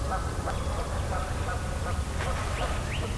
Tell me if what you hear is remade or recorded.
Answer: recorded